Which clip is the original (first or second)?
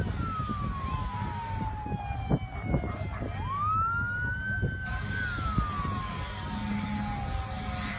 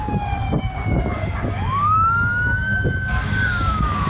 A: first